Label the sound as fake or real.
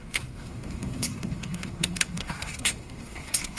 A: fake